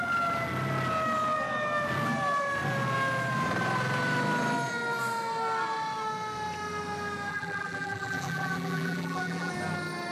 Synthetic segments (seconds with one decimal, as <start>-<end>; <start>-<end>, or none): 7.3-9.5